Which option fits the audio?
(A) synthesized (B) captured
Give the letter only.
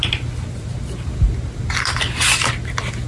B